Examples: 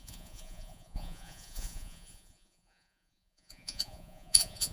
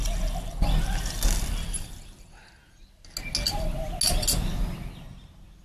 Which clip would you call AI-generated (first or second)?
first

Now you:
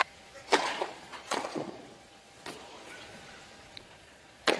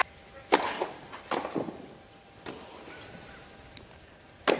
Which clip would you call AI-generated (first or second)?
first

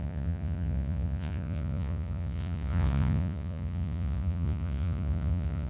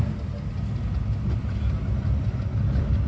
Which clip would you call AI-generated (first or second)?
first